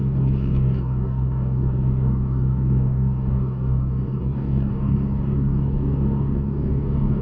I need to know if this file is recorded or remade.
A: remade